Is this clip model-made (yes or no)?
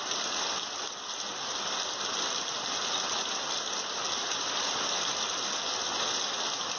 no